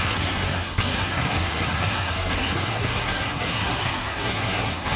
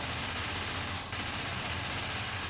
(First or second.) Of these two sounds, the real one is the second